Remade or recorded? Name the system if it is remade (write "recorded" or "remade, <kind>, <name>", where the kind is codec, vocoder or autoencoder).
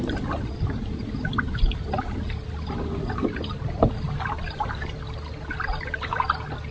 recorded